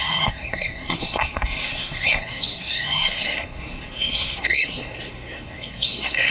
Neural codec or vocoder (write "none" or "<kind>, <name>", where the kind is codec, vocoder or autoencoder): codec, SNAC